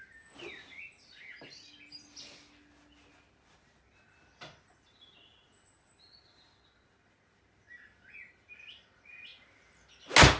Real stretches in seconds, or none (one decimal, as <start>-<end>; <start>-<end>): 0.0-10.4